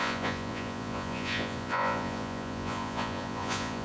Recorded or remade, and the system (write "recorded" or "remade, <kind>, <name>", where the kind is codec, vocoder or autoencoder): remade, vocoder, Vocos